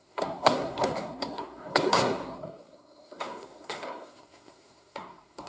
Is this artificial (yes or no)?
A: yes